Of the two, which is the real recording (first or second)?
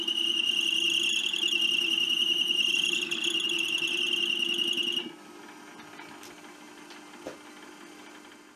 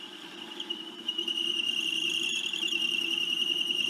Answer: first